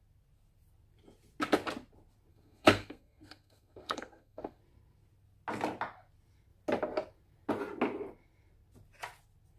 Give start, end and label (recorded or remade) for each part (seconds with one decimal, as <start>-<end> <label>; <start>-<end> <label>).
0.0-2.3 recorded; 2.3-4.6 remade; 4.6-9.6 recorded